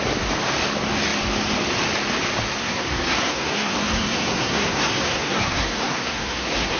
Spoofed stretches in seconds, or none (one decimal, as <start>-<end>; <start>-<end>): 2.6-6.8